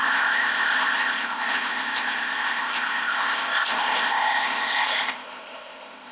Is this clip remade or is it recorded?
remade